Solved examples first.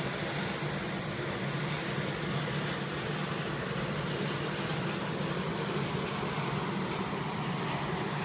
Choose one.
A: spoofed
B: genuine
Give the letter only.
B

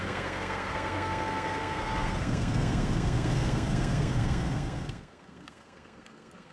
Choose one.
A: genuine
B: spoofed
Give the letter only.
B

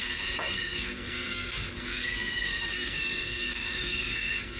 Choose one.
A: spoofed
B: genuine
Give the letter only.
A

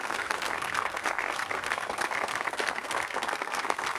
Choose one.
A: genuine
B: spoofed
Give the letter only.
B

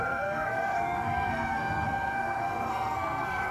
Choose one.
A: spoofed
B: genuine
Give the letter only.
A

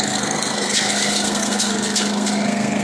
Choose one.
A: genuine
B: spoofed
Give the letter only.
B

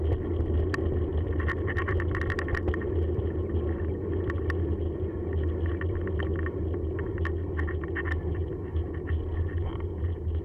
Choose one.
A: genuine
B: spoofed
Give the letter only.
A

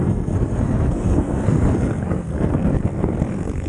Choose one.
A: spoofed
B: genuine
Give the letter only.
A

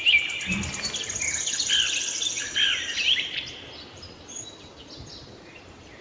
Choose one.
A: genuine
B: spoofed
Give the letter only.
A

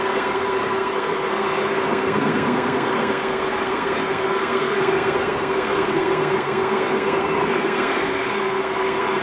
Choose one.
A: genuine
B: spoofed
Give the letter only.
B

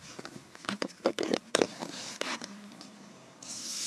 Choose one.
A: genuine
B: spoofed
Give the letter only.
B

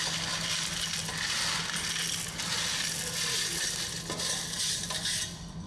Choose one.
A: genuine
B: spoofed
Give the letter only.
A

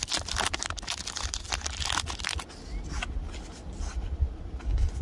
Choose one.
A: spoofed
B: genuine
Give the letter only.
B